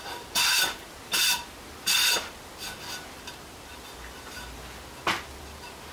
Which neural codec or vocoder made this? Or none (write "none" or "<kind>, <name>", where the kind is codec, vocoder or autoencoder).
none